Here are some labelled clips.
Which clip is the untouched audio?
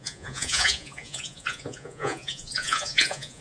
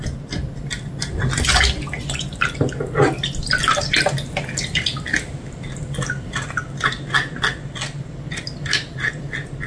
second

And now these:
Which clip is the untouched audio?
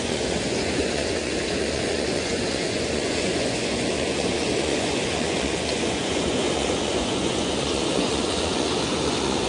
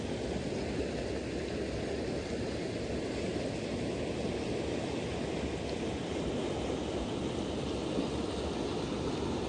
second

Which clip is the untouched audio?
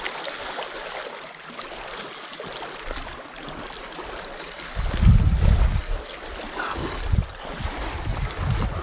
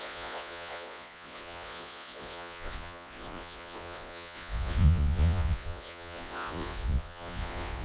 first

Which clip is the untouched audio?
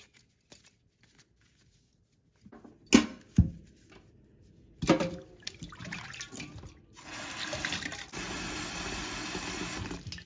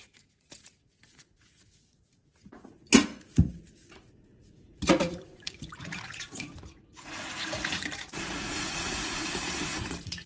first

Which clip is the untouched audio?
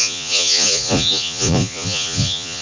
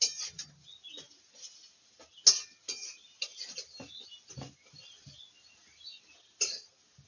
second